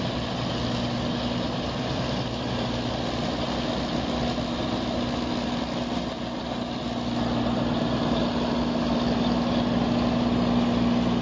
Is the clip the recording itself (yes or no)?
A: yes